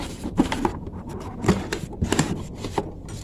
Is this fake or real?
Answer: fake